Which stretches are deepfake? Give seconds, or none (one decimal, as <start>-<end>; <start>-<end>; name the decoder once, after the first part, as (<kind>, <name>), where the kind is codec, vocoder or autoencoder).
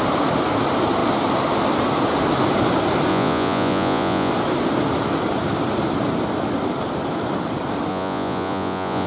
3.1-4.3 (vocoder, Vocos); 7.9-9.1